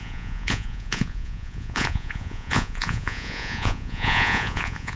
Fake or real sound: fake